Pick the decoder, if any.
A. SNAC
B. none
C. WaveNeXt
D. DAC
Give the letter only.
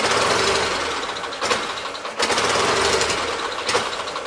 B